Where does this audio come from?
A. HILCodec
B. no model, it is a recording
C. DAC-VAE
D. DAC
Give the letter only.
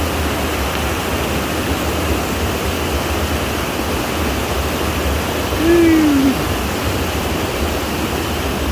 B